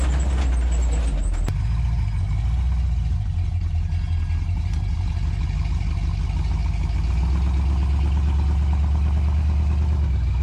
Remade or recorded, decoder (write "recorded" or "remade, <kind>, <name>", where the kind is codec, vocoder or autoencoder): recorded